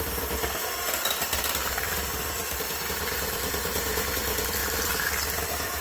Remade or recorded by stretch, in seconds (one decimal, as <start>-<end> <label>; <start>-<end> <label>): 0.0-5.8 remade